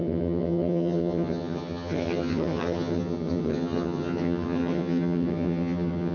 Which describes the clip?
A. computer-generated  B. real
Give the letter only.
A